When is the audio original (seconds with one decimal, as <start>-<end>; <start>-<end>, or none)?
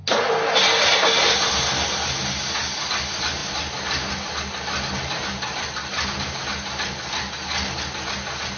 0.0-8.6